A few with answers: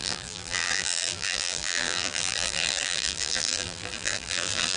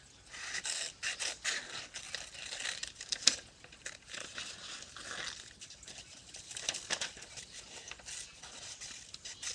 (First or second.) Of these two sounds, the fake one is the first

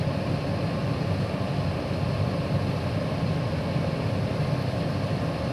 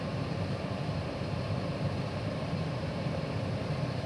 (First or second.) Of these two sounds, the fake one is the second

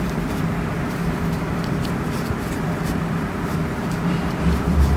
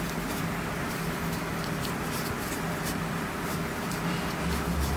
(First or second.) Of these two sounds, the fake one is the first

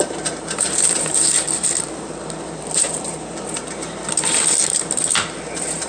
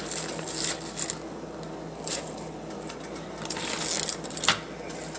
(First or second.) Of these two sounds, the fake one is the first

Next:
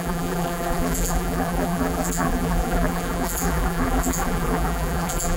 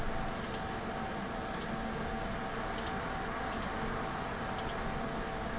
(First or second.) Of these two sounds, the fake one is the first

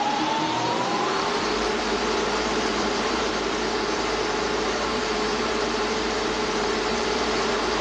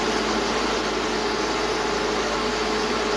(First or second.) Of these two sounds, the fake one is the first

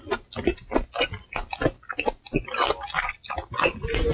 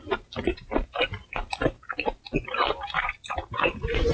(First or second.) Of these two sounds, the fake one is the second